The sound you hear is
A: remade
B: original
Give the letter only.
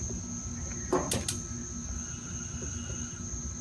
B